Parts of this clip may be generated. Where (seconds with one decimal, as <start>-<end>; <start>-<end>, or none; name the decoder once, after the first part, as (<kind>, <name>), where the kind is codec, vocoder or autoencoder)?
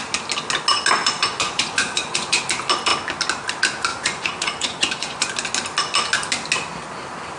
1.0-2.4 (vocoder, Vocos); 3.9-5.3